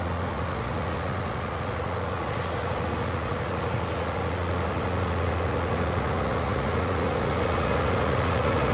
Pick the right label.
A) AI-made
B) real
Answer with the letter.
A